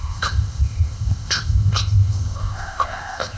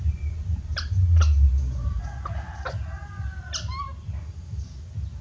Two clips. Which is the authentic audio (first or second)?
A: second